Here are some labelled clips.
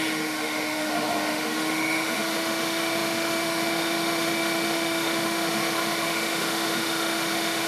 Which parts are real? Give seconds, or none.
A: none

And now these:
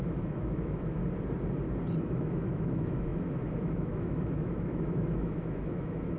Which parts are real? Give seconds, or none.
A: 1.0-2.0

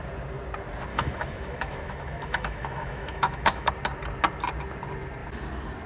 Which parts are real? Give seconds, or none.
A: 0.0-0.9; 3.7-5.9

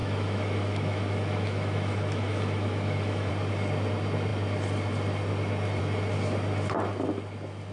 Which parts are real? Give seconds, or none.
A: 3.3-7.7

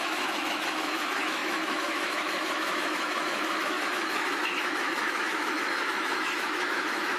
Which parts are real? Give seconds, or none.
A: none

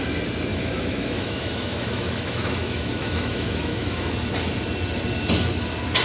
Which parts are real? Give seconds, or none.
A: 0.0-0.5; 4.1-6.0

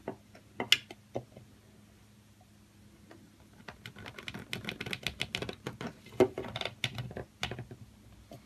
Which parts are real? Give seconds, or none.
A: 0.0-8.5

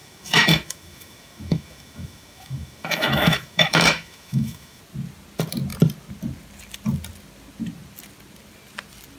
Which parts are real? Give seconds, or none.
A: 4.8-9.2